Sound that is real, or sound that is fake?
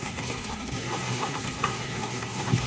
fake